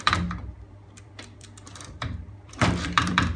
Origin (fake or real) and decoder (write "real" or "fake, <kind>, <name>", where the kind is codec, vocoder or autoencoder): fake, vocoder, BigVGAN v2